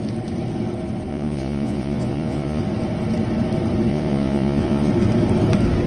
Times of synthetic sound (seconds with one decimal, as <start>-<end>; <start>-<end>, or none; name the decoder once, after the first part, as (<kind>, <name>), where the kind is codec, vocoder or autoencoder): 1.1-2.6 (vocoder, Vocos); 3.9-4.9